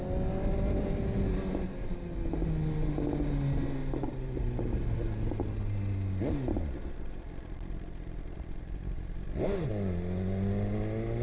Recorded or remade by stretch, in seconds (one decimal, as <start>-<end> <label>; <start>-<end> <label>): 0.0-3.8 recorded; 3.8-4.6 remade; 4.6-11.2 recorded